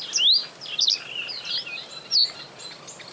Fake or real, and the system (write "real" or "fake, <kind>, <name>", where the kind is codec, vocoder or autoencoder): real